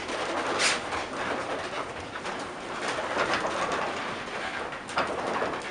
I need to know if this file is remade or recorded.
recorded